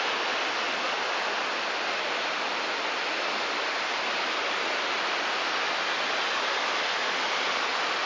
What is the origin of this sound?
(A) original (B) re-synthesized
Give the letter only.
A